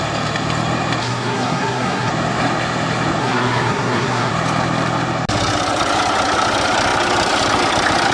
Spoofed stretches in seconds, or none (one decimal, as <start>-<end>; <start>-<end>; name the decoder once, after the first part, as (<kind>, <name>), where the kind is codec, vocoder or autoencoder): 1.0-2.1 (codec, SNAC); 3.2-4.3